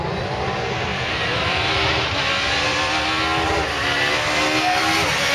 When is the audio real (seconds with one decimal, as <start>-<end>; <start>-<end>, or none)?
0.0-0.9; 2.1-5.3